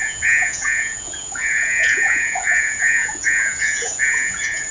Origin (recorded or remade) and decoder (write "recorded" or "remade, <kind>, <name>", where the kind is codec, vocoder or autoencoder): remade, vocoder, Vocos